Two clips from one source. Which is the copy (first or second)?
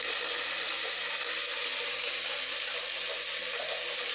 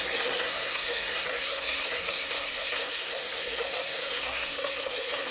second